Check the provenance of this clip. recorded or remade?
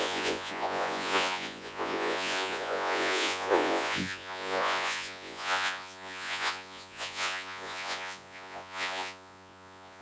remade